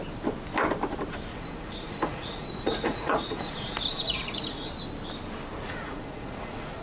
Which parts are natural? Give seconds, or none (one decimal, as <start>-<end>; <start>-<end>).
0.0-1.3; 4.7-5.5